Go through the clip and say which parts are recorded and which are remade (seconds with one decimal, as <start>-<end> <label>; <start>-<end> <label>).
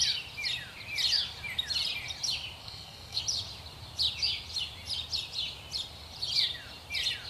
0.0-2.6 recorded; 2.6-3.2 remade; 3.2-7.3 recorded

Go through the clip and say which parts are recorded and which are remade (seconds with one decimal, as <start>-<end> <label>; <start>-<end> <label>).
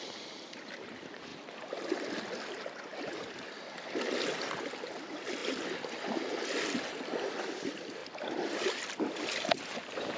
0.0-10.2 recorded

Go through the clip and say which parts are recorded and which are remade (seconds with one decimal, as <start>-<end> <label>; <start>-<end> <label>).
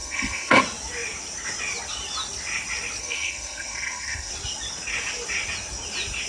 0.0-0.6 remade; 0.6-3.0 recorded; 3.0-4.3 remade; 4.3-6.3 recorded